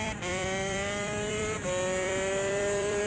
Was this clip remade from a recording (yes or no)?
yes